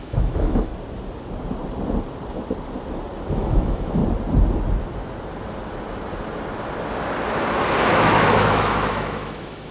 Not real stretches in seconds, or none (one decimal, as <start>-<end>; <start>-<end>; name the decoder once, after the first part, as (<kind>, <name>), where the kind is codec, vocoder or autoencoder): 0.0-0.7 (autoencoder, DAC-VAE); 3.3-4.0; 7.8-9.7